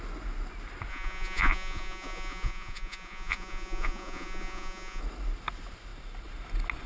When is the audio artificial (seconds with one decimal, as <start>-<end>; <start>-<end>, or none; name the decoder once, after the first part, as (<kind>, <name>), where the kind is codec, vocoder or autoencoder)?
0.9-5.0 (vocoder, Vocos)